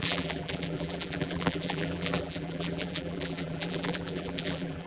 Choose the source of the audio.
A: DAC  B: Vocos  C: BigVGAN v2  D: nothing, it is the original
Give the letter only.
C